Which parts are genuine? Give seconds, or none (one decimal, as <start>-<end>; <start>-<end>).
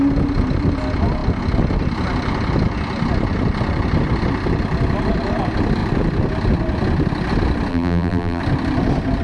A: 0.0-7.7; 8.4-9.2